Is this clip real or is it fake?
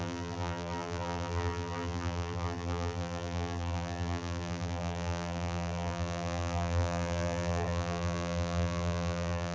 fake